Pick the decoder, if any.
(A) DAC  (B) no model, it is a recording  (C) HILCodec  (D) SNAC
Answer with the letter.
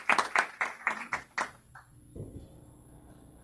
B